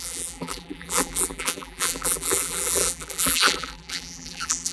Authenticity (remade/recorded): remade